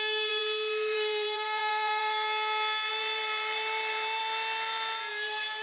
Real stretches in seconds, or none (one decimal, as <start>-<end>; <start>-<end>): 4.2-5.1